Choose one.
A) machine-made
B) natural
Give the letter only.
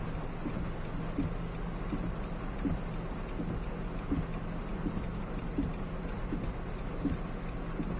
B